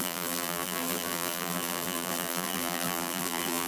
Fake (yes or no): yes